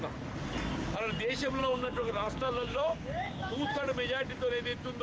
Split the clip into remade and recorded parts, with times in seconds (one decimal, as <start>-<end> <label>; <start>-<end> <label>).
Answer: 0.0-1.6 recorded; 1.6-3.8 remade; 3.8-5.0 recorded